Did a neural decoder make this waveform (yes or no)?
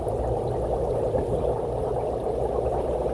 yes